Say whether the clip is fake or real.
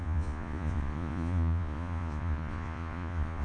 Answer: fake